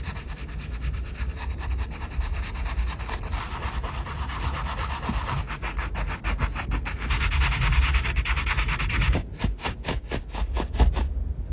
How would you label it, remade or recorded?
recorded